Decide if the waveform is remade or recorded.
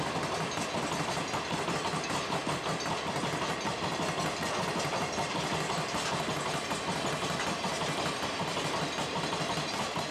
recorded